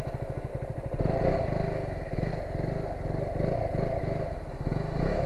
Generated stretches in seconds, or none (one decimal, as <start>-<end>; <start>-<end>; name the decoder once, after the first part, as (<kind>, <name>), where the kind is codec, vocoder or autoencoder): 0.0-0.5 (autoencoder, DAC-VAE); 1.2-2.3; 4.0-5.3